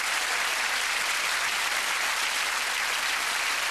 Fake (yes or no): no